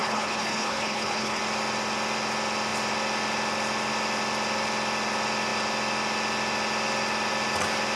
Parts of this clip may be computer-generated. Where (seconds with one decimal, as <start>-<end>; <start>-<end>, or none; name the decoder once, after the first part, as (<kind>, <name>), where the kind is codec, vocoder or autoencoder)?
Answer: 0.0-1.4 (codec, HILCodec)